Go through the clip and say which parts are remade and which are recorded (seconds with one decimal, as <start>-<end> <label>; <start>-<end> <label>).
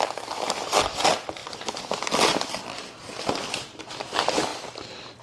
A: 0.0-5.2 recorded